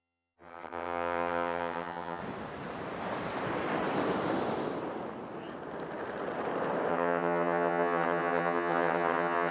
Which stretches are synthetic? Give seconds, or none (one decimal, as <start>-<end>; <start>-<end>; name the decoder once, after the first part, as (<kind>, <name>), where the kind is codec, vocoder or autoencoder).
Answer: 0.0-2.2 (vocoder, HiFi-GAN); 6.9-9.5